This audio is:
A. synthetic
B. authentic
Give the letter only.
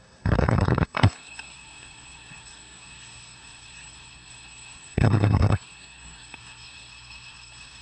A